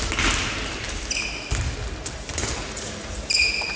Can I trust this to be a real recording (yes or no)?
yes